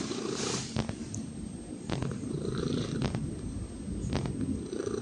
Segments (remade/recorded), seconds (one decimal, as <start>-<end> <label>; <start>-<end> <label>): 0.0-1.0 recorded; 1.0-3.3 remade; 3.3-5.0 recorded